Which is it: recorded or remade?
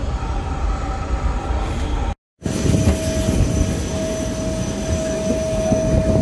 recorded